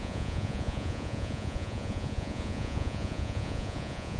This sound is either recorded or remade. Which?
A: remade